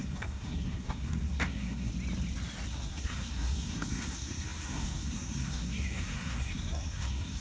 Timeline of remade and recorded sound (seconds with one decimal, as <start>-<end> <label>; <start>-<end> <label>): 0.0-1.9 remade; 1.9-2.7 recorded; 2.7-7.4 remade